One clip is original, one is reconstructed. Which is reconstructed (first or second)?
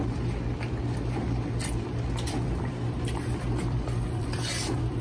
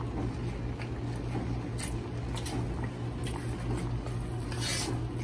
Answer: first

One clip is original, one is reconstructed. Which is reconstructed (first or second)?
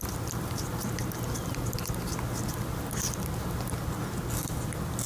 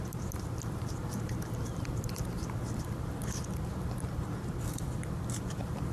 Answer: second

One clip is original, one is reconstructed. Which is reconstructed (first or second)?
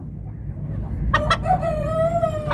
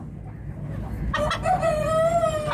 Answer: first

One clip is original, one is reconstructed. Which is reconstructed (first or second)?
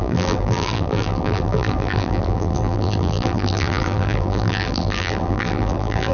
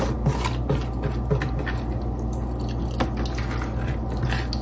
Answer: first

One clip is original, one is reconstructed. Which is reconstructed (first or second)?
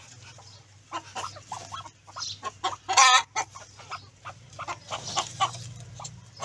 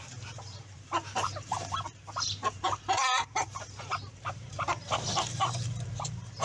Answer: second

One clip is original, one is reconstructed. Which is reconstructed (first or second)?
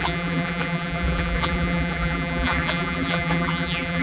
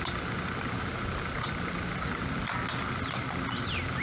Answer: first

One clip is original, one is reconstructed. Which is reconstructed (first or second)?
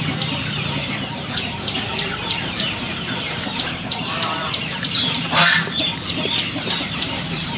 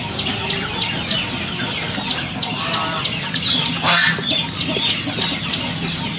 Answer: first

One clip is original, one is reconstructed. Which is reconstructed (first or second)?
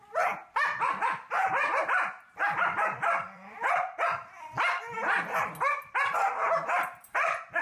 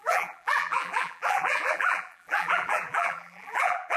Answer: second